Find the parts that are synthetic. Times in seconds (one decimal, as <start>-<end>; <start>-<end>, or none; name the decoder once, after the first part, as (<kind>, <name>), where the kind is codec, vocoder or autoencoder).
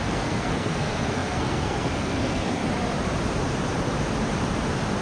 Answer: 0.0-2.6 (codec, SNAC)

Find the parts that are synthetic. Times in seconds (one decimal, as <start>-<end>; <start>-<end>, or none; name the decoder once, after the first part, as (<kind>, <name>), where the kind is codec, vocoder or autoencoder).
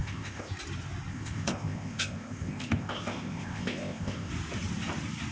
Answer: 0.0-0.5 (codec, ZipCodec); 1.1-4.3